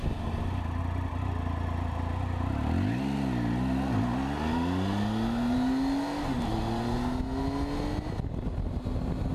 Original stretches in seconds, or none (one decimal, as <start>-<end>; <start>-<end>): 0.0-9.3